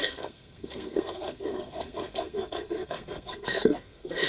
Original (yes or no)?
no